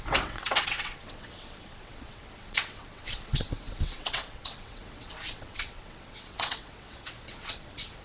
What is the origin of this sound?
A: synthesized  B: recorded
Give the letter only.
A